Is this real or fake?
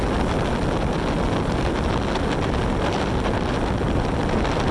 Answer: real